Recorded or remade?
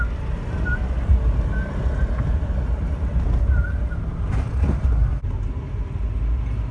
recorded